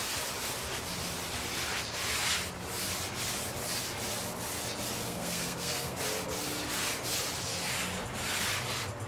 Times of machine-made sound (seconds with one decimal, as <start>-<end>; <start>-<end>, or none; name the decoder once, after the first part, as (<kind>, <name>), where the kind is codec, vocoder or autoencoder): 5.0-6.0 (codec, SNAC)

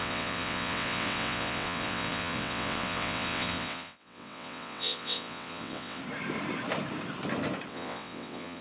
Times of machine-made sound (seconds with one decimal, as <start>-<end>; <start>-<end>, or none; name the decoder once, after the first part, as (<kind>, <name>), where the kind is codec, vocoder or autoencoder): 0.0-6.0 (vocoder, WaveNeXt); 7.7-8.6

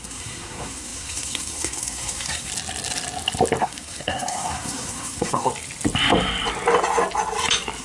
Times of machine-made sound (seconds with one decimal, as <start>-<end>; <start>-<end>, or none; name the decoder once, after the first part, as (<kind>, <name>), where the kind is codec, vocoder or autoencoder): 0.0-2.5 (codec, SNAC); 3.6-5.5

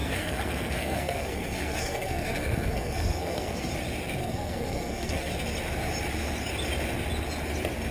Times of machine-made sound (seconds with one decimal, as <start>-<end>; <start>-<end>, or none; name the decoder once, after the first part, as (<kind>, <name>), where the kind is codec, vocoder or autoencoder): 0.0-3.7 (codec, SNAC); 4.2-5.3

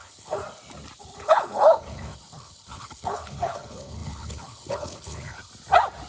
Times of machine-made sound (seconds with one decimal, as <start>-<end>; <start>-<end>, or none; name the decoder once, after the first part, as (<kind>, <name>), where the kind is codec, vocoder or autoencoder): 0.0-0.4 (codec, HILCodec); 1.0-5.4

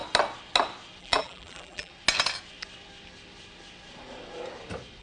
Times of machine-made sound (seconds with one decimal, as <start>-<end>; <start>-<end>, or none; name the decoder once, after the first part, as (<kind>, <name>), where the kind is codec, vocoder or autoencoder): 1.0-1.9 (vocoder, BigVGAN v2)

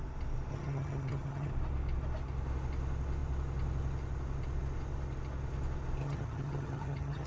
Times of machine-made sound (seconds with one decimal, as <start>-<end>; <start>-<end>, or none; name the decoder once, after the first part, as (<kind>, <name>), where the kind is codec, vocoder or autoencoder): 0.5-1.5 (vocoder, HiFi-GAN); 6.0-7.3

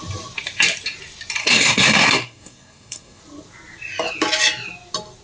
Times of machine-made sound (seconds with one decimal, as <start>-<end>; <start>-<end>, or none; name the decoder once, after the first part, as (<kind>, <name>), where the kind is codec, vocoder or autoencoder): 1.4-3.2 (codec, SNAC)